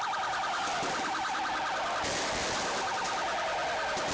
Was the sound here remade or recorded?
recorded